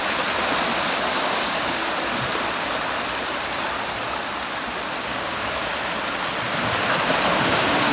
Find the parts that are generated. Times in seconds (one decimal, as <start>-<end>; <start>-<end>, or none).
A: 1.1-1.8; 5.0-5.7; 7.4-7.9